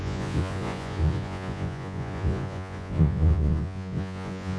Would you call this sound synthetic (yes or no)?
yes